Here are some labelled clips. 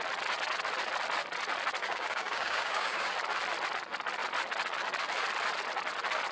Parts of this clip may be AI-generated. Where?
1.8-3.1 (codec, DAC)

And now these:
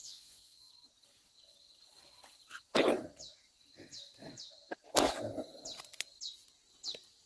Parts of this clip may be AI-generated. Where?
0.0-0.7 (vocoder, Vocos)

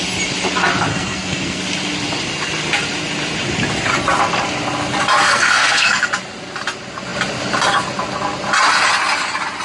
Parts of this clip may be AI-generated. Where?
0.9-1.6 (codec, SNAC); 5.2-6.1

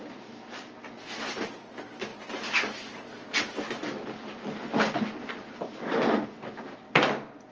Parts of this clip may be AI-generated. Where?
none